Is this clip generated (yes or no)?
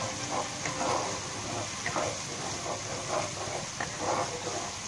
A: no